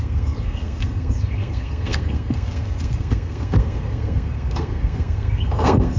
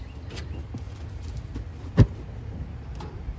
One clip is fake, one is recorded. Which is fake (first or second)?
first